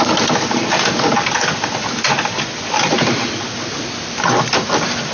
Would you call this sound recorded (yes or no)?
yes